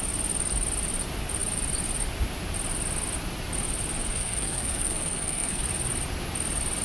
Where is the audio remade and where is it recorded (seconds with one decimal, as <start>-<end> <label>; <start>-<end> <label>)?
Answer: 0.0-4.1 recorded; 4.1-5.6 remade; 5.6-6.8 recorded